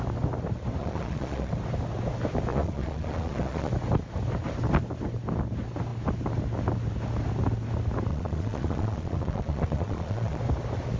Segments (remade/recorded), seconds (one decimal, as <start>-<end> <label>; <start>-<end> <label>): 0.0-0.8 recorded; 0.8-1.5 remade; 1.5-2.5 recorded; 2.5-3.7 remade; 3.7-8.1 recorded; 8.1-10.4 remade; 10.4-11.0 recorded